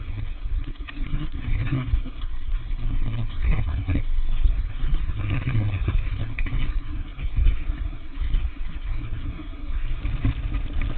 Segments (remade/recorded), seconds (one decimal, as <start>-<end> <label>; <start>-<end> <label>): 0.0-10.0 remade; 10.0-11.0 recorded